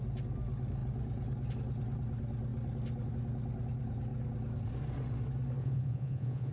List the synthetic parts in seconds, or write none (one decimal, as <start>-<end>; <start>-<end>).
5.6-6.5